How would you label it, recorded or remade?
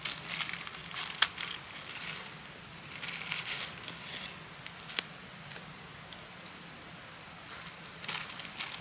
recorded